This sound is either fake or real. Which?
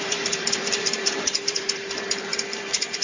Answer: fake